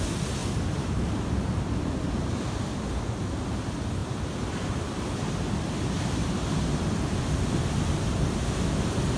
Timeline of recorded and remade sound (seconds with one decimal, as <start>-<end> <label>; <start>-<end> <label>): 0.0-0.4 recorded; 0.4-2.4 remade; 2.4-4.0 recorded; 4.0-7.3 remade; 7.3-9.2 recorded

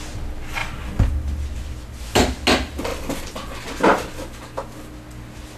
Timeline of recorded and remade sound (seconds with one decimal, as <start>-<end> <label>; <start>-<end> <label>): 0.0-5.6 recorded